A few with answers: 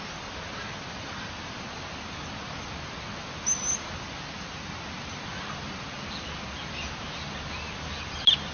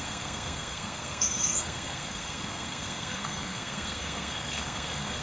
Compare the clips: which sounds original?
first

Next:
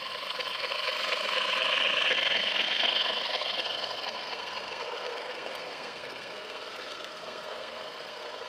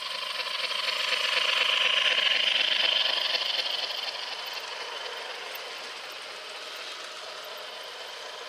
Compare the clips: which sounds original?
second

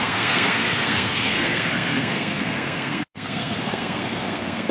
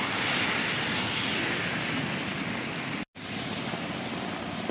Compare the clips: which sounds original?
second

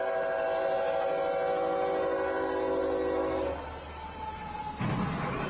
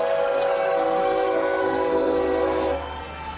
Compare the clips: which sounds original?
first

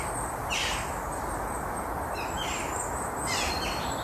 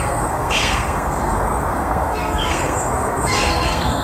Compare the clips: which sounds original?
first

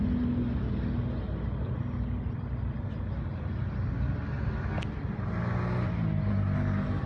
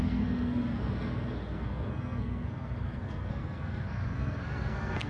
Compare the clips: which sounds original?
first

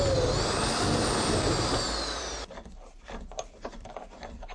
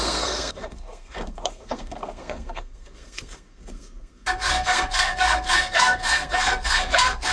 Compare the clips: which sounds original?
first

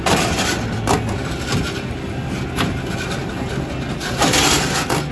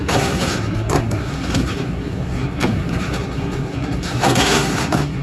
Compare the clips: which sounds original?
first